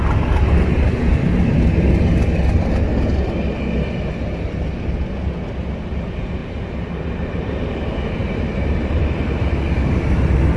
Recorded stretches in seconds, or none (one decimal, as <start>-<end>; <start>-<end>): 0.0-8.2; 9.6-10.6